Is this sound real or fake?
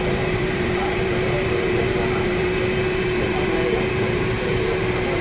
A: fake